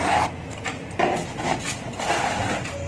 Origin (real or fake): real